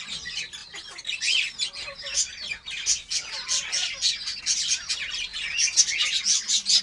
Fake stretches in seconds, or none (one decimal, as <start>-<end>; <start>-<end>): none